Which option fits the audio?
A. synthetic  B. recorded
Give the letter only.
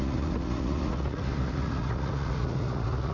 A